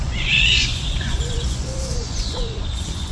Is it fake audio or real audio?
fake